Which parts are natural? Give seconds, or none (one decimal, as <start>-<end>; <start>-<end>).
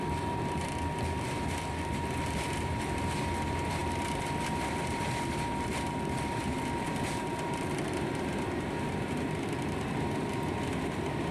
none